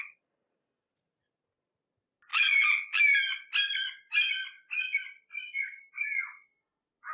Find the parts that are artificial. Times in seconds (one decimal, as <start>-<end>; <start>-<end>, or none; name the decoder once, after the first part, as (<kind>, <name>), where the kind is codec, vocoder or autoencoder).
2.3-3.0 (vocoder, BigVGAN v2)